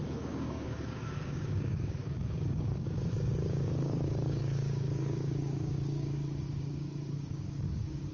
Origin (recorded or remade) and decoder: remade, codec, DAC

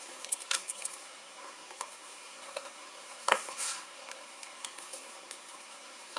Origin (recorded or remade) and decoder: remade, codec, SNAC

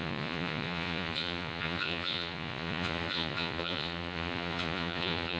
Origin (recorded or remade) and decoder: remade, vocoder, Vocos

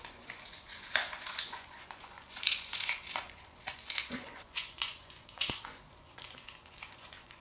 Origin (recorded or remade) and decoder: remade, vocoder, Vocos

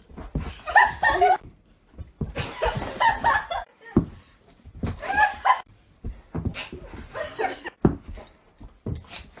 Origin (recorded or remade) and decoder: remade, vocoder, BigVGAN v2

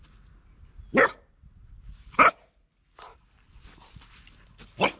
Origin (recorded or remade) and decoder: remade, vocoder, BigVGAN v2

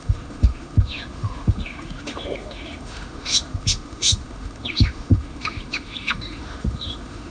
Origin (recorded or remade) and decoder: remade, autoencoder, DAC-VAE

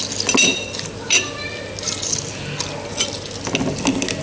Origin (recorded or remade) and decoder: recorded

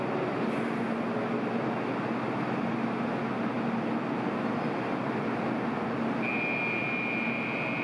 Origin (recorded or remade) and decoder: recorded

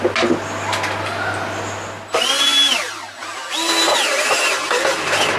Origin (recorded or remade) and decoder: recorded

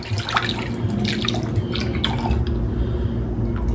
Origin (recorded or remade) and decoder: recorded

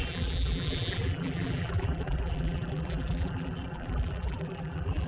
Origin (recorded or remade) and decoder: remade, vocoder, BigVGAN v2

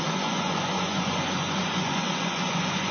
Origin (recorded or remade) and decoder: remade, vocoder, Vocos